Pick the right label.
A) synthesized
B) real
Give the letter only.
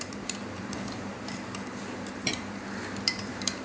A